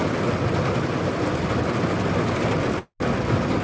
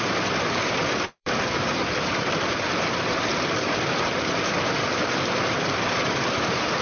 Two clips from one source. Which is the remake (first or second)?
second